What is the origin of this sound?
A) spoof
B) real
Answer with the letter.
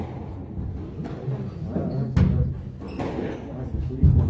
B